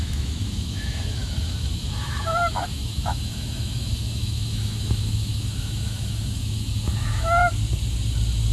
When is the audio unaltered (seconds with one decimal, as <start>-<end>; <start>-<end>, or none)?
7.4-8.5